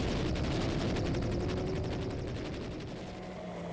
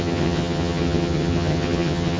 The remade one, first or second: second